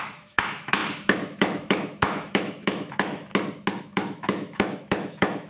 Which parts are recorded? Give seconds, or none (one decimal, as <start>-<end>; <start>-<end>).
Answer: 3.3-3.8